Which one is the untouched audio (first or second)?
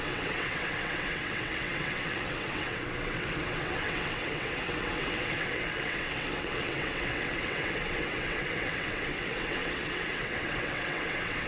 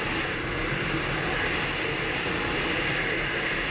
second